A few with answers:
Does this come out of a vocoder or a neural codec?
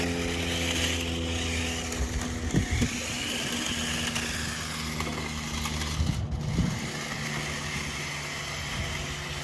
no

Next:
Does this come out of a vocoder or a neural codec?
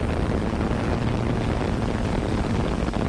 no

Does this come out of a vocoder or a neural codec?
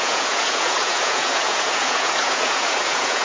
yes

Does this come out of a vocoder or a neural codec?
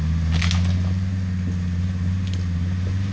no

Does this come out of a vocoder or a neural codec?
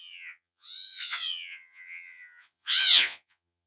yes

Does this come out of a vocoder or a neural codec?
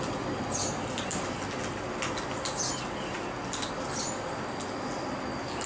no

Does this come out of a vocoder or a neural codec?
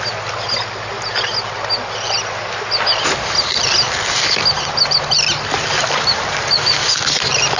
no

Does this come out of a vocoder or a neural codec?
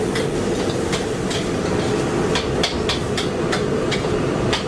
no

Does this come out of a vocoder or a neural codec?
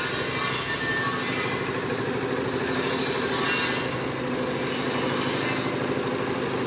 no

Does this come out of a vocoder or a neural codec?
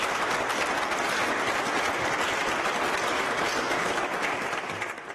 no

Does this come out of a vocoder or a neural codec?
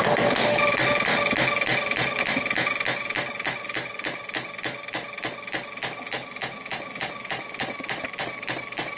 no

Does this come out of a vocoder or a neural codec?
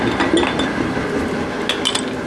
no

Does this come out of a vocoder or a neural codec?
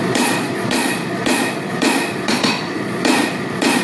yes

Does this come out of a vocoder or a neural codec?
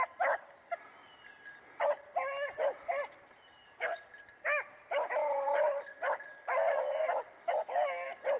no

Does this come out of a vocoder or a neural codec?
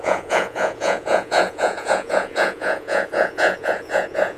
yes